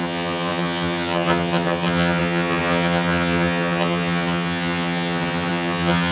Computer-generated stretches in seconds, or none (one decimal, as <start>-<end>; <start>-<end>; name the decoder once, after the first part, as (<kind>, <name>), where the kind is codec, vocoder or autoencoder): 0.0-6.1 (vocoder, HiFi-GAN)